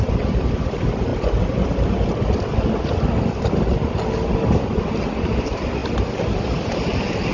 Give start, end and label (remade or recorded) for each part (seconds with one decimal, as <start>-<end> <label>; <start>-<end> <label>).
0.0-1.1 remade; 1.1-4.8 recorded; 4.8-5.8 remade; 5.8-6.4 recorded; 6.4-7.3 remade